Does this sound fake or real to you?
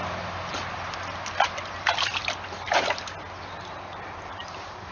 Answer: real